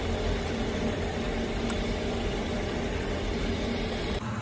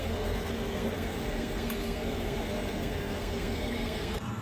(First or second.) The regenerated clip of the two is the second